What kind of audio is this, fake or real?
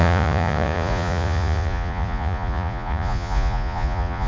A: fake